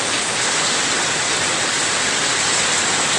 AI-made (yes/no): no